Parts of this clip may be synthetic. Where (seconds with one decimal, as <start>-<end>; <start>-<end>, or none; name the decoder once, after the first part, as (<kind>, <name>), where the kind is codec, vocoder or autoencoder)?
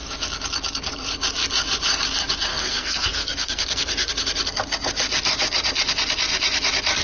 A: 2.5-4.1 (codec, SNAC)